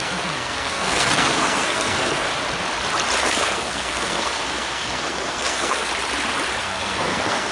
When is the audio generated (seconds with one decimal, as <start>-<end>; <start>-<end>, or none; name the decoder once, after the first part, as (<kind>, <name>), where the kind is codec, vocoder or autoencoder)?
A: 0.0-2.3 (codec, SNAC); 3.2-5.9; 6.6-7.5